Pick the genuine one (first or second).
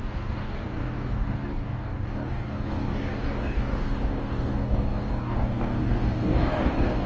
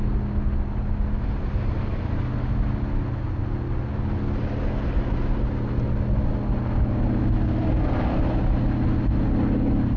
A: second